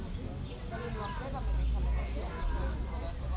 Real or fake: real